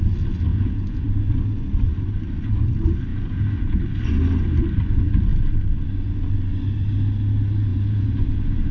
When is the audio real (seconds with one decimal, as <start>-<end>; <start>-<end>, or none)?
0.0-0.5; 1.0-3.1; 3.8-7.7